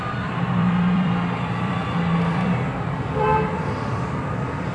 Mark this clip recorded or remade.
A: remade